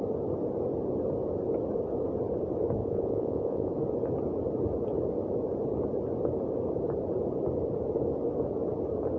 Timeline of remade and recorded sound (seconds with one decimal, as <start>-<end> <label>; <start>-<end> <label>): 0.0-2.8 recorded; 2.8-3.7 remade; 3.7-9.2 recorded